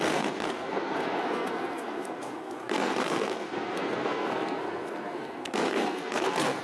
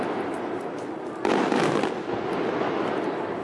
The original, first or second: second